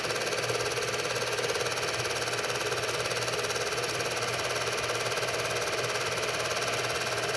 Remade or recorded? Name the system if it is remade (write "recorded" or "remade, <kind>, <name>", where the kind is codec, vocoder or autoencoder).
recorded